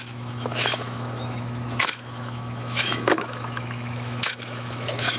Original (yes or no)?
no